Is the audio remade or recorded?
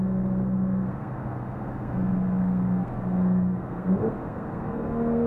remade